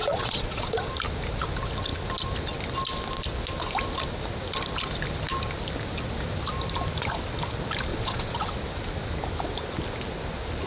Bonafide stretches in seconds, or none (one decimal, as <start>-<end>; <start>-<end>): 0.9-7.9; 8.5-10.7